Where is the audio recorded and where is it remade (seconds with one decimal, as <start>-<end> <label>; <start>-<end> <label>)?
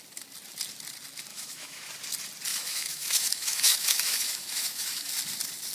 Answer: 0.0-1.3 recorded; 1.3-1.9 remade; 1.9-2.5 recorded; 2.5-5.1 remade; 5.1-5.7 recorded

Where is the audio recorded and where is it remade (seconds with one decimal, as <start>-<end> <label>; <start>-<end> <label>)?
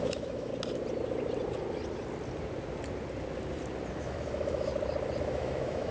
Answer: 0.0-0.5 remade; 0.5-4.0 recorded; 4.0-4.7 remade; 4.7-5.2 recorded; 5.2-5.9 remade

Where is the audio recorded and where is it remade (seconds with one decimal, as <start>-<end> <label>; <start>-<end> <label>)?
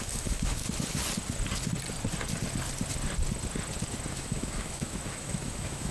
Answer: 0.0-0.6 remade; 0.6-4.1 recorded; 4.1-5.9 remade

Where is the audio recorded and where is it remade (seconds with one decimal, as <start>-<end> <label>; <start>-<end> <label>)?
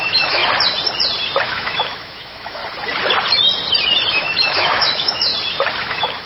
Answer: 0.0-0.4 remade; 0.4-1.4 recorded; 1.4-2.6 remade; 2.6-4.1 recorded; 4.1-5.3 remade; 5.3-5.8 recorded; 5.8-6.3 remade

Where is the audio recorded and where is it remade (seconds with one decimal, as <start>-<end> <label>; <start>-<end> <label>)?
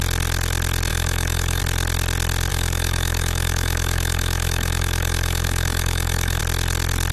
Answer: 0.0-0.9 recorded; 0.9-1.6 remade; 1.6-2.5 recorded; 2.5-6.4 remade; 6.4-7.1 recorded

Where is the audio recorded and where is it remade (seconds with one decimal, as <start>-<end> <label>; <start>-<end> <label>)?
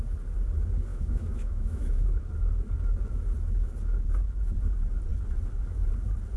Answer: 0.0-0.9 recorded; 0.9-2.2 remade; 2.2-6.4 recorded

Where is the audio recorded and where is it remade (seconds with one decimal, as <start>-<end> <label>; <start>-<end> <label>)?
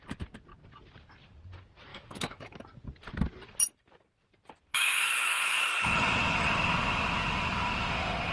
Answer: 0.0-1.9 recorded; 1.9-2.6 remade; 2.6-4.7 recorded; 4.7-5.6 remade; 5.6-8.3 recorded